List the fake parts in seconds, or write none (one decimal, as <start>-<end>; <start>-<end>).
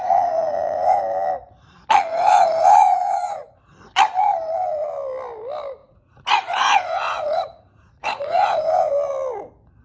0.0-1.0; 2.1-3.5; 5.8-8.9